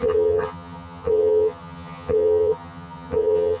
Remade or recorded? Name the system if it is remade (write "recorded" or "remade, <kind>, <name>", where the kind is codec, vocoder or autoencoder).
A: remade, vocoder, HiFi-GAN